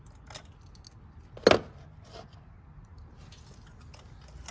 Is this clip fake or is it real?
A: real